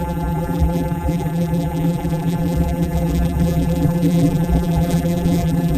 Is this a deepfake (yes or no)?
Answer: yes